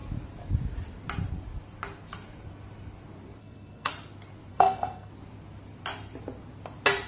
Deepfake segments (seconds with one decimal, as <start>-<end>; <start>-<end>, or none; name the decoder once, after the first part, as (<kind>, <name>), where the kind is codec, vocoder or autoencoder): 3.4-3.9 (codec, SNAC); 4.5-5.1